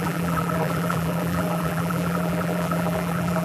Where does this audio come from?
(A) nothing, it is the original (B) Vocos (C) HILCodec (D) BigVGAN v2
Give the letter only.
D